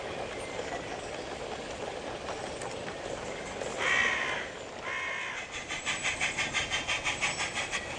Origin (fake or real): real